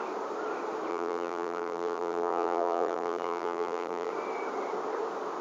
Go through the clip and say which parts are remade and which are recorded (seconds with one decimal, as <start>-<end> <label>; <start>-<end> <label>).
0.0-0.9 recorded; 0.9-4.1 remade; 4.1-5.4 recorded

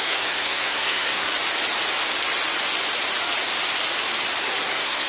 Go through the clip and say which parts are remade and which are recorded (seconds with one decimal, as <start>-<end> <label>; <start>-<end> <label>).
0.0-1.3 remade; 1.3-4.4 recorded; 4.4-5.1 remade

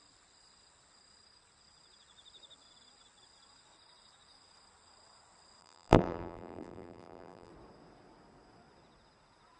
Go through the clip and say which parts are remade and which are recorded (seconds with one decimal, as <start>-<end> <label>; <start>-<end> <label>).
0.0-5.6 recorded; 5.6-7.5 remade; 7.5-9.6 recorded

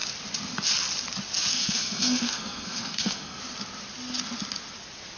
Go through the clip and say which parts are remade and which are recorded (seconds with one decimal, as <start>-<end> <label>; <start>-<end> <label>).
0.0-1.5 recorded; 1.5-3.4 remade; 3.4-5.2 recorded

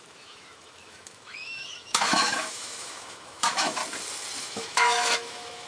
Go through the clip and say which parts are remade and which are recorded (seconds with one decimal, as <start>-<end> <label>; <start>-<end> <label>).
0.0-3.8 remade; 3.8-4.4 recorded; 4.4-5.7 remade

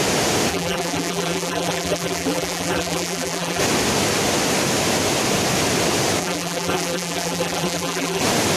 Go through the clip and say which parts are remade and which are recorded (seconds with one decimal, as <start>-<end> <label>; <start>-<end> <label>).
0.0-0.5 recorded; 0.5-3.6 remade; 3.6-6.2 recorded; 6.2-8.2 remade; 8.2-8.6 recorded